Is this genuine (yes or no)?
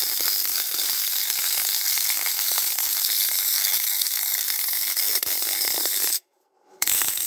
no